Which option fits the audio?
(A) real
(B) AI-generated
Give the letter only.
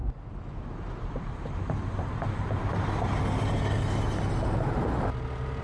A